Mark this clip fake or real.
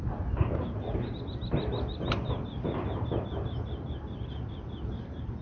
real